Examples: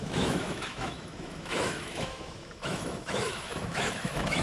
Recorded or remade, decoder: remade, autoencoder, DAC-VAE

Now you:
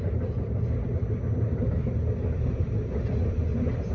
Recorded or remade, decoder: recorded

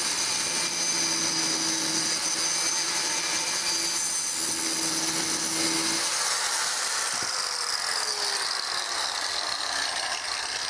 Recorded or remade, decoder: recorded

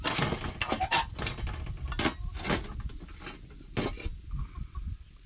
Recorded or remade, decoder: recorded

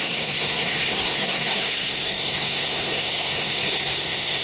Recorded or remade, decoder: remade, codec, SNAC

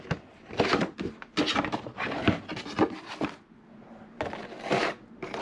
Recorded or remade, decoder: recorded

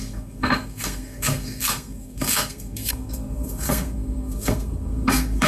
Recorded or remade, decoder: remade, codec, SNAC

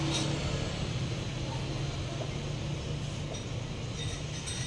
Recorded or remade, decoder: recorded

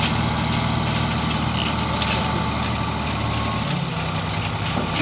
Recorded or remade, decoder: recorded